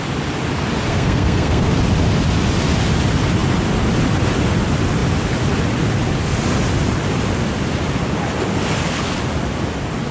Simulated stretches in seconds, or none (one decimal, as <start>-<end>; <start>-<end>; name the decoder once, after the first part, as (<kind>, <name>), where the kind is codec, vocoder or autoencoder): 0.9-1.7 (codec, SNAC)